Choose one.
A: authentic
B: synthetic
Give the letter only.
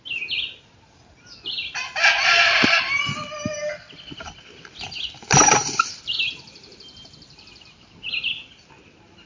A